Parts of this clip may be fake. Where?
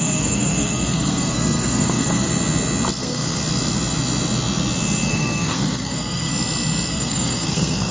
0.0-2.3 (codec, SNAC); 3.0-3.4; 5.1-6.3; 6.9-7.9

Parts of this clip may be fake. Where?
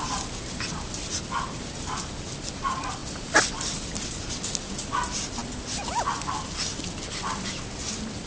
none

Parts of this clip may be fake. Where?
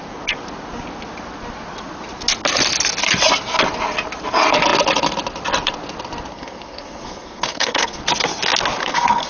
6.3-8.0 (codec, SNAC); 8.8-9.3